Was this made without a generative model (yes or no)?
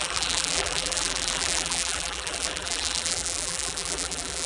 no